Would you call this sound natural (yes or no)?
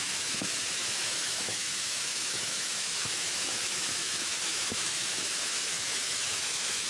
no